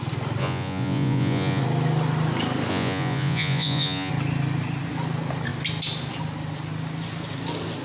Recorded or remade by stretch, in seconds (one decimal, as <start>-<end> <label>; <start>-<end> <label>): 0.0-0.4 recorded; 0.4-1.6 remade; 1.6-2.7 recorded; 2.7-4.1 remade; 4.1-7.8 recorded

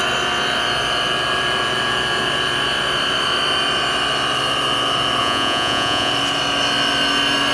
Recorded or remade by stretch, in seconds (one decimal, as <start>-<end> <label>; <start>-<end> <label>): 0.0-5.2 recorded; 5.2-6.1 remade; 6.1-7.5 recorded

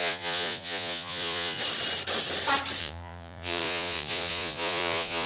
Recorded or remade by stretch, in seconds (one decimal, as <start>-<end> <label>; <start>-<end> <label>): 0.0-1.6 remade; 1.6-2.8 recorded; 2.8-5.3 remade